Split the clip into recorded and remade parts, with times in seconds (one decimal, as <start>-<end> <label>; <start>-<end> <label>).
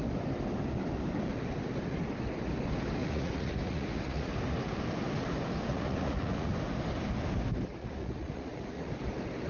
0.0-3.0 recorded; 3.0-4.3 remade; 4.3-5.7 recorded; 5.7-6.5 remade; 6.5-7.8 recorded; 7.8-8.9 remade; 8.9-9.5 recorded